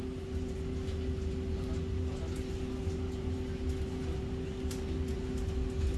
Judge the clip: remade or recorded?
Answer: recorded